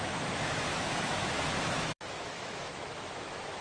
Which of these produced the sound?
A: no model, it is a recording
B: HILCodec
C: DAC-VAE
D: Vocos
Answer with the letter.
C